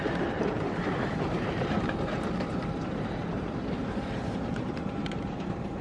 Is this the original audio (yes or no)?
no